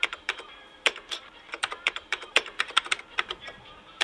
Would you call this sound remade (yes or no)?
yes